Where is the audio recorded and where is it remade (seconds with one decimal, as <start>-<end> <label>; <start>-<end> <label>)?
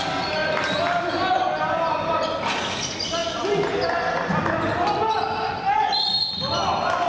0.0-7.1 recorded